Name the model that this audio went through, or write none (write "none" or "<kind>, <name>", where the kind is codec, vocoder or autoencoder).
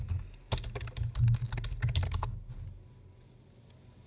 none